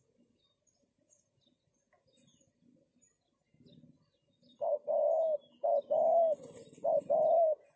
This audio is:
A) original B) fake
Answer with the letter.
A